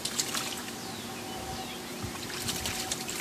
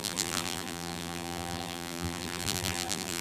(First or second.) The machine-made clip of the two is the second